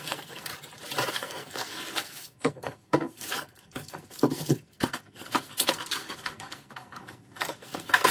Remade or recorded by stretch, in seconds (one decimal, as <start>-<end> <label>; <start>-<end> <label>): 0.0-0.5 remade; 0.5-1.1 recorded; 1.1-8.1 remade